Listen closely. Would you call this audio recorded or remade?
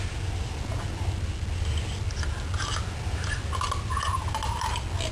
recorded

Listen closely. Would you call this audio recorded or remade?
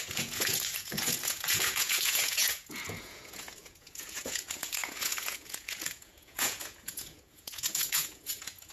remade